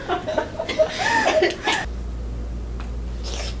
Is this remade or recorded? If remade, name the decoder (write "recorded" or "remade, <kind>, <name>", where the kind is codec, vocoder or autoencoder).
recorded